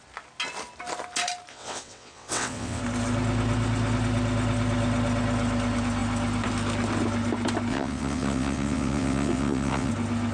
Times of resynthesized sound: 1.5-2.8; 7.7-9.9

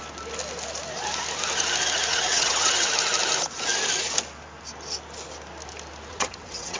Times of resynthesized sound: 2.1-2.9; 6.1-6.8

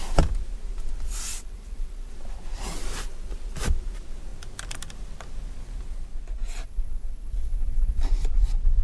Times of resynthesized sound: 1.3-2.1; 6.6-8.0

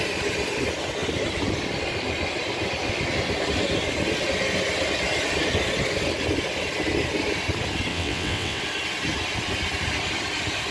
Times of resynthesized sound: 7.9-8.6

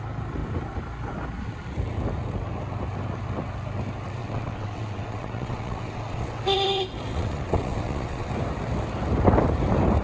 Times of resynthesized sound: 4.2-6.4; 7.1-8.3

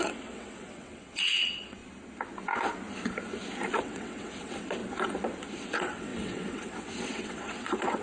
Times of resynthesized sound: 0.0-1.8; 3.8-4.8; 5.5-8.0